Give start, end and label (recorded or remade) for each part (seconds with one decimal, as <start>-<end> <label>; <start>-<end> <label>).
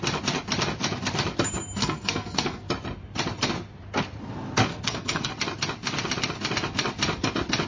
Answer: 0.0-1.8 recorded; 1.8-2.7 remade; 2.7-4.7 recorded; 4.7-5.3 remade; 5.3-7.7 recorded